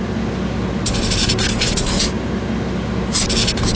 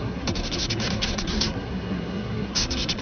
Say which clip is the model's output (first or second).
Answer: second